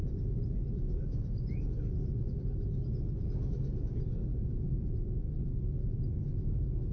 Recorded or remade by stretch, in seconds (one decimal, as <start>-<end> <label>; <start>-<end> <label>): 0.0-5.2 recorded; 5.2-6.9 remade